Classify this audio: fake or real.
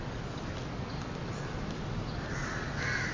real